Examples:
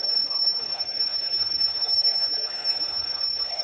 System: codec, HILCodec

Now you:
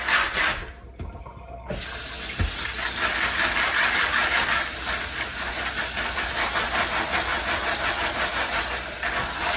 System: none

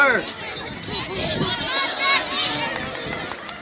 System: none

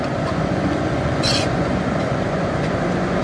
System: vocoder, Vocos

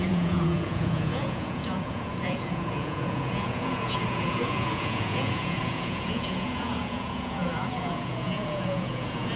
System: vocoder, Vocos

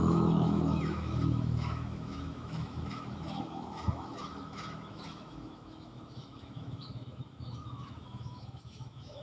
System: autoencoder, DAC-VAE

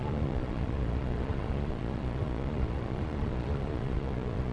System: vocoder, Vocos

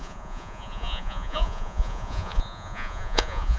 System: vocoder, Vocos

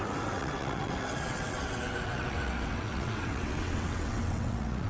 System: vocoder, WaveNeXt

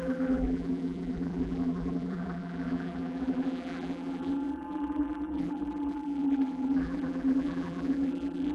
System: vocoder, BigVGAN v2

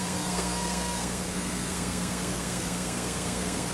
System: codec, SNAC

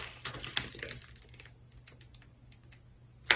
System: none